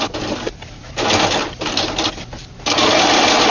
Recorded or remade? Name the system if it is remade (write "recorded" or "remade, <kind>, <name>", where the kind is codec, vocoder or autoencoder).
recorded